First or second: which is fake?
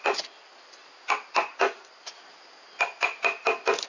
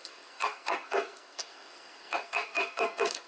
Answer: second